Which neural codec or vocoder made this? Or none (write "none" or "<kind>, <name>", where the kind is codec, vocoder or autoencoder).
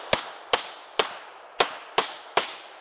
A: none